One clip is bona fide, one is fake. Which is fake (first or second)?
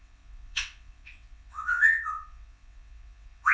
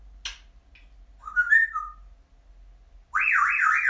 first